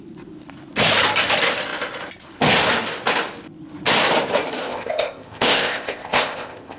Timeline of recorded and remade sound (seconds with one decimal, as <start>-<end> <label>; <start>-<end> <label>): 0.0-4.6 recorded; 4.6-6.8 remade